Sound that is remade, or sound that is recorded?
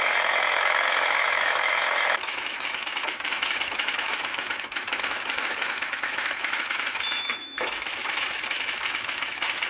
remade